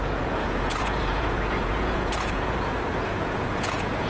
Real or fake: fake